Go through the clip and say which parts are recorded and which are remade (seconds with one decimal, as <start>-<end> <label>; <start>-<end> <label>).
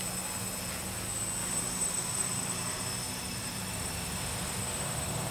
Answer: 0.0-1.4 recorded; 1.4-4.6 remade; 4.6-5.3 recorded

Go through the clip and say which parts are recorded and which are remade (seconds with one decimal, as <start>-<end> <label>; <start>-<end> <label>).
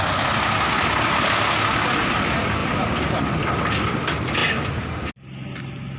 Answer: 0.0-2.6 recorded; 2.6-3.2 remade; 3.2-6.0 recorded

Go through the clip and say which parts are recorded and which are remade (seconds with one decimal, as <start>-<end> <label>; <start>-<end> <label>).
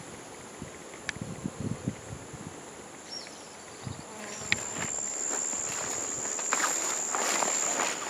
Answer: 0.0-8.1 recorded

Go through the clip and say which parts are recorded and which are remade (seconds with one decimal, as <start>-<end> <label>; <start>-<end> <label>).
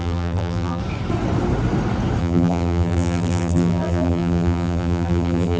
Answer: 0.0-0.8 remade; 0.8-2.2 recorded; 2.2-5.6 remade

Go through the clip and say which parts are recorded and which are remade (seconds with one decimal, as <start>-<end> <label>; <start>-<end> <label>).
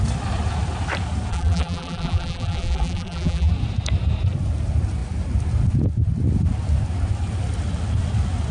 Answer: 0.0-1.3 recorded; 1.3-3.5 remade; 3.5-8.5 recorded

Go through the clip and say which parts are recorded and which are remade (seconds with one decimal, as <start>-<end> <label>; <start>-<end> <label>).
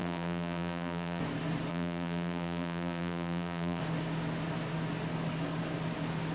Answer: 0.0-1.2 remade; 1.2-1.7 recorded; 1.7-3.8 remade; 3.8-6.3 recorded